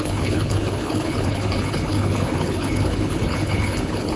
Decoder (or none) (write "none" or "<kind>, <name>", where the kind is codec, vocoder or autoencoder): codec, HILCodec